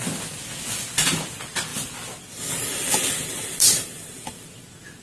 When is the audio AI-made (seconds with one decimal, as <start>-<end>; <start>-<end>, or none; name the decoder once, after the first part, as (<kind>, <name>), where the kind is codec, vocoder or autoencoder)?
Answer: none